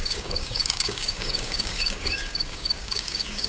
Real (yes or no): no